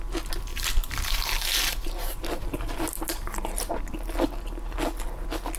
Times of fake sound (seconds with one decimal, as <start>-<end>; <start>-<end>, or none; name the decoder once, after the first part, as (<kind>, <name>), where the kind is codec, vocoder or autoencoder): 0.5-3.9 (vocoder, BigVGAN v2)